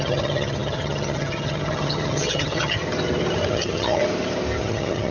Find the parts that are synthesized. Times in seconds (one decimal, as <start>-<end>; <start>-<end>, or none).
0.0-2.8; 3.5-4.0; 4.6-5.1